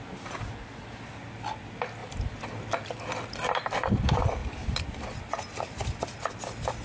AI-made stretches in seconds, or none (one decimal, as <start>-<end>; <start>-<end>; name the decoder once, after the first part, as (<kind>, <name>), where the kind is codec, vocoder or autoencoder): 4.4-6.3 (vocoder, BigVGAN v2)